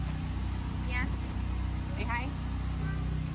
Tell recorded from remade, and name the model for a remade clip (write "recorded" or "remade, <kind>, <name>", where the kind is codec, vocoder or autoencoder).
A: recorded